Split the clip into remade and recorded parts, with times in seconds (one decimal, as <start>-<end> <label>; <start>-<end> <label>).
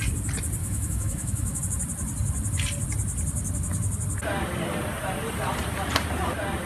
0.0-0.6 recorded; 0.6-1.6 remade; 1.6-6.7 recorded